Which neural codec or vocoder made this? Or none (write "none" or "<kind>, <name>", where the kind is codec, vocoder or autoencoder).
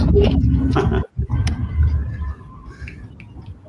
none